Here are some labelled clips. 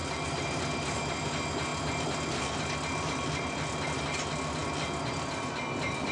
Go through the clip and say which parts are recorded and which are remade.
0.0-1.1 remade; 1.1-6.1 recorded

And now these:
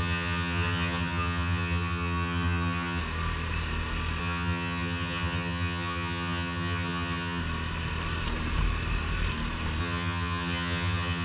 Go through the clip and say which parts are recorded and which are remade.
0.0-3.0 remade; 3.0-4.2 recorded; 4.2-7.4 remade; 7.4-9.8 recorded; 9.8-11.2 remade

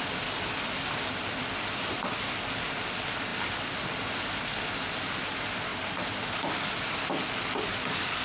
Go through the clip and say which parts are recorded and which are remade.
0.0-3.3 recorded; 3.3-4.9 remade; 4.9-8.2 recorded

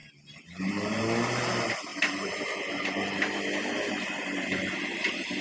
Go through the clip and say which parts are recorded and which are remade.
0.0-1.9 recorded; 1.9-2.7 remade; 2.7-5.4 recorded